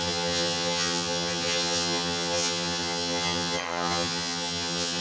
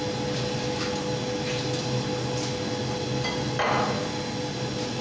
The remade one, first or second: first